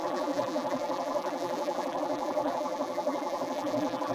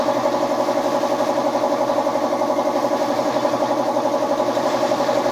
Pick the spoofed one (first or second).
first